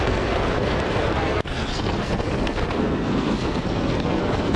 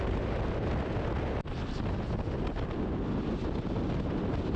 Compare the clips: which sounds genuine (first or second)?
second